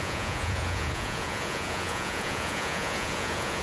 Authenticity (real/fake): fake